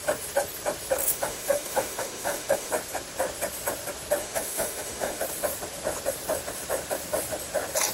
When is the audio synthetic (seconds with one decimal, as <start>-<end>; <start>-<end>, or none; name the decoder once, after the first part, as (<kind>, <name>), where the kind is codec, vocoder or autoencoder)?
1.0-2.7 (autoencoder, DAC-VAE); 4.2-5.2